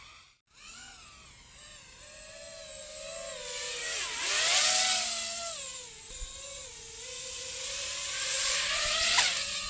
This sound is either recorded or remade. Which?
recorded